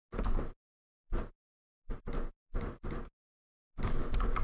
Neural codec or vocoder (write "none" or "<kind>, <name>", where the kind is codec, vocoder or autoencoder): none